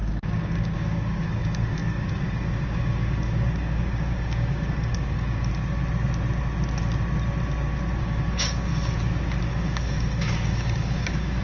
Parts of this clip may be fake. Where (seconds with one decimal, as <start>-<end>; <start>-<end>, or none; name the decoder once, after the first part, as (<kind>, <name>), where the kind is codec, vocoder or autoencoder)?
0.0-5.5 (codec, DAC); 8.0-8.7; 9.4-11.4